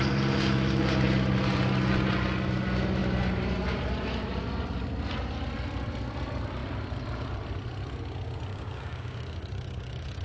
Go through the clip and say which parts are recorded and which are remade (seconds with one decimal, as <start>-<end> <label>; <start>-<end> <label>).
0.0-8.5 recorded; 8.5-10.2 remade